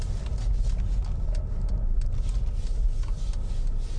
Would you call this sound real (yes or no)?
yes